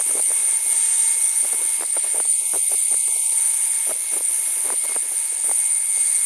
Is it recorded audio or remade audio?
recorded